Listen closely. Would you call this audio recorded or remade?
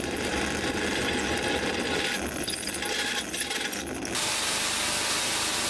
recorded